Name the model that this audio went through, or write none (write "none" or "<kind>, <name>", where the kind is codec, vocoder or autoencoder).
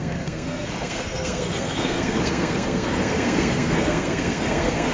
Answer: codec, SNAC